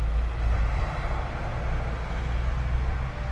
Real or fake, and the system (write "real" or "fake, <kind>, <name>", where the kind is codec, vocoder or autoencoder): real